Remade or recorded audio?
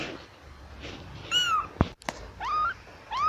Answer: recorded